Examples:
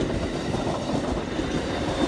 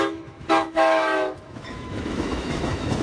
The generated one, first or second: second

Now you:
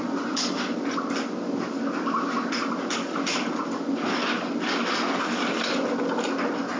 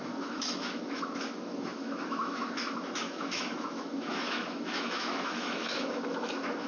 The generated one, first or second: second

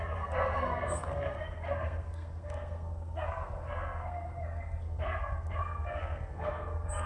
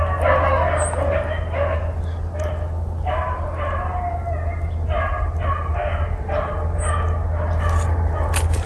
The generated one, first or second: first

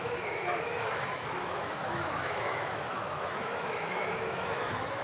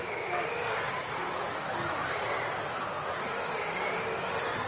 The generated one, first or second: first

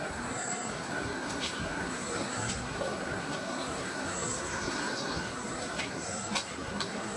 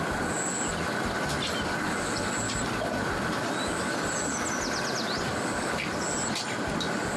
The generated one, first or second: first